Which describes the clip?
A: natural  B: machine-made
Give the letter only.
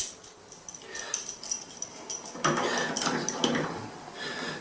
A